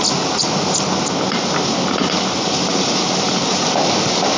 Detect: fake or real real